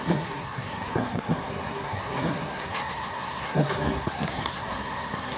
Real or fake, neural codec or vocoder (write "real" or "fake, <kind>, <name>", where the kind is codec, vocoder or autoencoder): fake, codec, SNAC